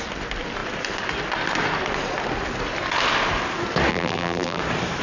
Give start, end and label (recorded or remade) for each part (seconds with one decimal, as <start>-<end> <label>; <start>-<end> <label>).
0.0-3.9 recorded; 3.9-4.6 remade; 4.6-5.0 recorded

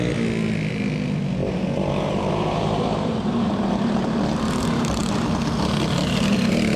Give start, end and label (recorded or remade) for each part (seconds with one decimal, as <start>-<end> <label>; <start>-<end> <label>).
0.0-1.4 recorded; 1.4-5.0 remade; 5.0-6.8 recorded